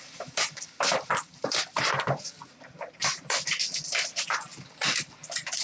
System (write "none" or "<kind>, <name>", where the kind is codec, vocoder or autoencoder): vocoder, BigVGAN v2